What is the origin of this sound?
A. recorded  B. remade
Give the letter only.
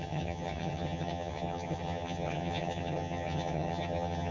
B